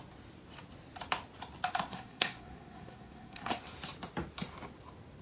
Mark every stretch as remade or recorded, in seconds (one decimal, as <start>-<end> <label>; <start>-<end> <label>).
0.0-1.9 recorded; 1.9-3.6 remade; 3.6-5.2 recorded